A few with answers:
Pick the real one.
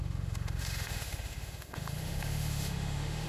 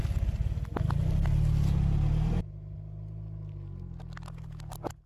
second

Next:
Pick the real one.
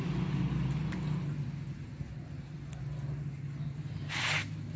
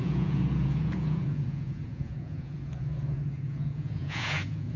first